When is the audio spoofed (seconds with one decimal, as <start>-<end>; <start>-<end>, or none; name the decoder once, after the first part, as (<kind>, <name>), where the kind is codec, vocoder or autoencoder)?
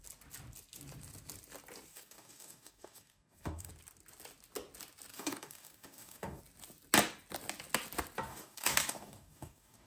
1.9-3.7 (codec, DAC); 5.1-6.4; 8.3-9.9